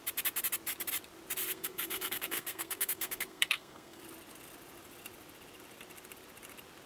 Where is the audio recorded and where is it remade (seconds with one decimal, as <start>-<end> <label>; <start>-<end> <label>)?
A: 0.0-1.5 recorded; 1.5-4.0 remade; 4.0-6.9 recorded